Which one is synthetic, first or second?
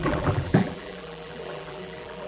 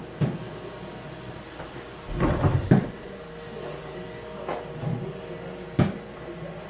first